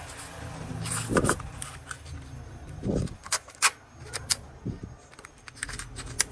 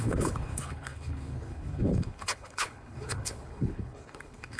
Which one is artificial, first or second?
second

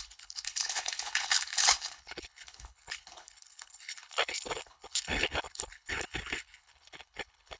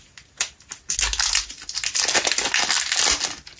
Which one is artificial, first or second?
first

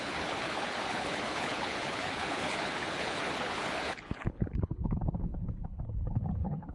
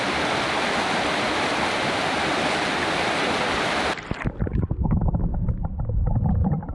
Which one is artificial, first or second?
first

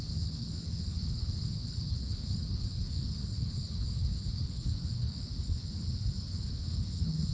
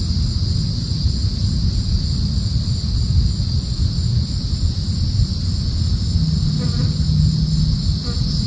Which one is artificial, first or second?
first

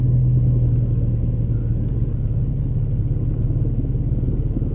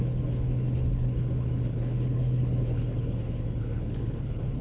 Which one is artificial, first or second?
second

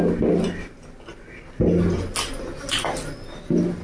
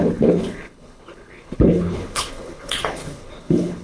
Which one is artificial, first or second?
second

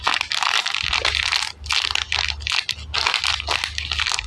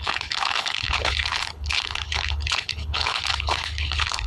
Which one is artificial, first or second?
second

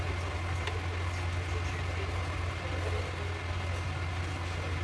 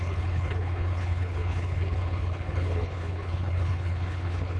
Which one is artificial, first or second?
second